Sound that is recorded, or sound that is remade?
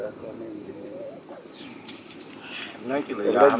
recorded